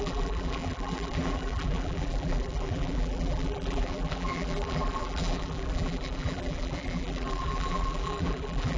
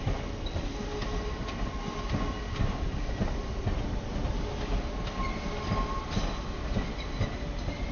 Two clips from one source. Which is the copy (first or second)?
first